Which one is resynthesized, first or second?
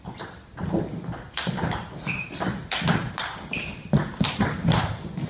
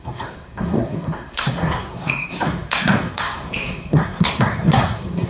second